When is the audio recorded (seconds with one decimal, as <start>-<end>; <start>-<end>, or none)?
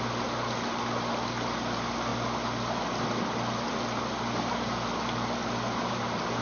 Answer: 0.0-6.4